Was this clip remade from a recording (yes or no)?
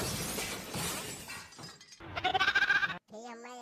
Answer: no